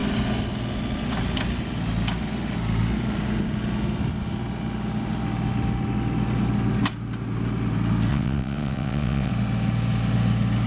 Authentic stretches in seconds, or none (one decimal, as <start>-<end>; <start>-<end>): 0.0-8.1; 9.3-10.7

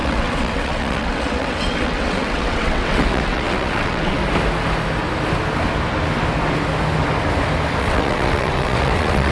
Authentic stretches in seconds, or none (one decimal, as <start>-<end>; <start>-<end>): 4.2-7.8

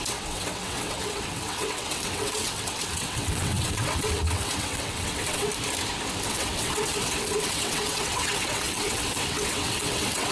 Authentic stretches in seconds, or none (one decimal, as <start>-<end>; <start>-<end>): 5.5-6.3